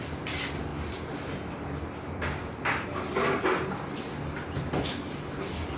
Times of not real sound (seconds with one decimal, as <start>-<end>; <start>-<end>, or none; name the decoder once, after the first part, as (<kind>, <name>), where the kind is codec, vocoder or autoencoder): none